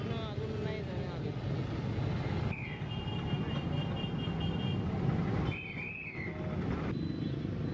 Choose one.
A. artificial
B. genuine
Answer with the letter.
B